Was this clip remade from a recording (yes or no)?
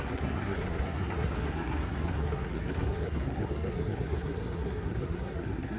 yes